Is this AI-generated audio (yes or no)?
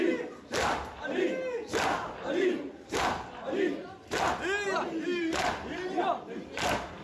no